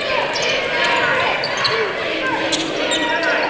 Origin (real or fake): real